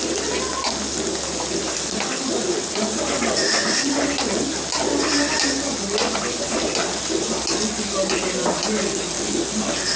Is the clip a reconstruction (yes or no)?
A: no